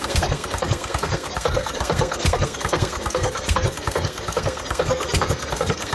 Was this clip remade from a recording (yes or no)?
yes